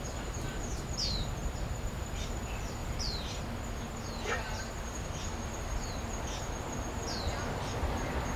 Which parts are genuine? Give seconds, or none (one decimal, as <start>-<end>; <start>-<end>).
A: 0.0-1.4; 2.2-2.8; 3.4-8.4

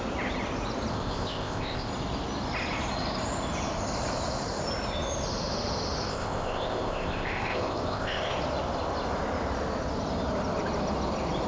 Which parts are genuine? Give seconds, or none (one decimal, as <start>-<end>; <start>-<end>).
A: 0.0-0.9; 1.9-6.1; 8.3-11.5

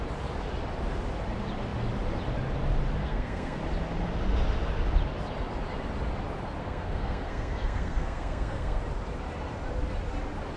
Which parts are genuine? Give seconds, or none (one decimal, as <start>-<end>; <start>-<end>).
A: 0.0-3.0; 3.6-6.6; 8.8-10.6

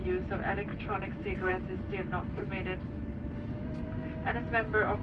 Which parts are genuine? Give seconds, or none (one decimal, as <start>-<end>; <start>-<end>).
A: 0.0-0.7; 1.5-5.0

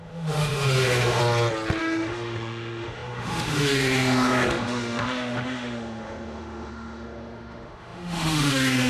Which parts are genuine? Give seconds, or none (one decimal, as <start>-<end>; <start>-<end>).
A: 1.2-1.8

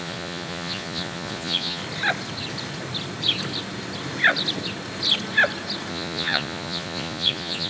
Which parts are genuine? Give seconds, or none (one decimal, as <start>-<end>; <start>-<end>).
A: 1.8-5.9

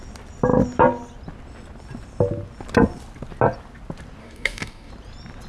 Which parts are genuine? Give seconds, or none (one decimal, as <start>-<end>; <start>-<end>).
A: 0.0-4.2; 4.9-5.5